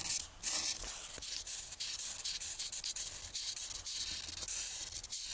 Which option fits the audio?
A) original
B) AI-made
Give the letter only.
A